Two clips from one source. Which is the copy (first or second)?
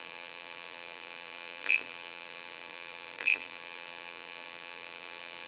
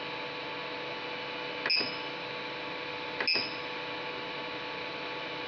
first